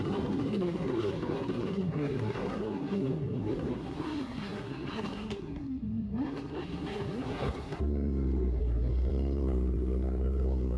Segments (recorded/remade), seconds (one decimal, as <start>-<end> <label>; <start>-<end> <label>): 0.0-10.8 remade